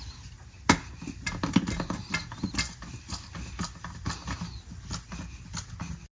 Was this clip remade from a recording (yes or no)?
no